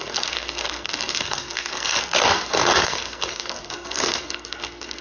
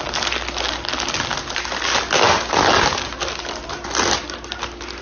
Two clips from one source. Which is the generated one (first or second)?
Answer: first